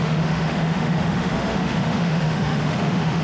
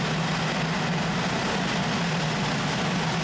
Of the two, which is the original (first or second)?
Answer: second